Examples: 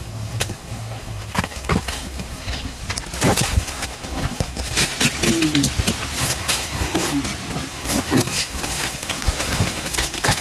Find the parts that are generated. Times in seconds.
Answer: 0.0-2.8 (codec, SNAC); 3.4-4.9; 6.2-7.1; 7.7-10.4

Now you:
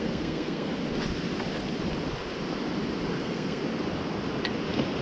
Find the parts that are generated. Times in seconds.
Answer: 0.0-0.7 (codec, SNAC); 3.2-3.6

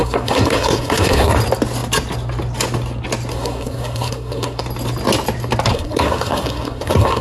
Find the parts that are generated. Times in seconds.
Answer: 0.0-1.3 (codec, SNAC); 3.3-4.6; 5.7-7.2

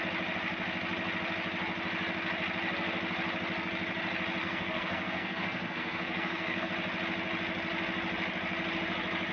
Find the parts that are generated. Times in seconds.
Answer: 4.4-6.7 (codec, SNAC)